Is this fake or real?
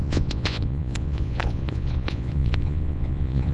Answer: fake